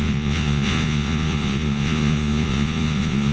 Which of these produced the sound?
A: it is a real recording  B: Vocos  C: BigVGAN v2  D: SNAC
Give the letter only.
B